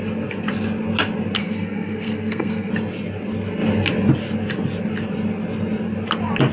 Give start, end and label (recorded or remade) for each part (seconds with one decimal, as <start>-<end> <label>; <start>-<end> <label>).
0.0-1.4 recorded; 1.4-2.7 remade; 2.7-6.5 recorded